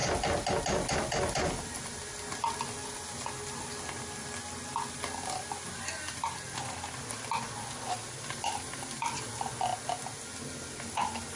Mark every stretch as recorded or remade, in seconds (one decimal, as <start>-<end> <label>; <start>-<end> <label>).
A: 0.0-11.4 recorded